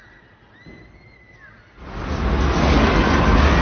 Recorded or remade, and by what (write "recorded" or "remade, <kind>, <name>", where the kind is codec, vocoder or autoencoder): recorded